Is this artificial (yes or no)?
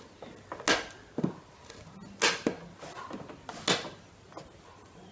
no